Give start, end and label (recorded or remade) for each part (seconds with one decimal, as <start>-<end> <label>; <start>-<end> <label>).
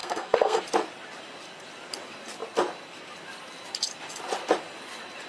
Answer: 0.0-0.6 remade; 0.6-5.3 recorded